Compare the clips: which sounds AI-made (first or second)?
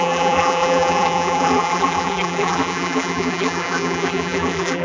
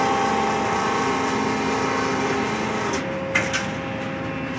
first